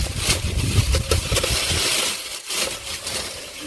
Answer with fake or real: fake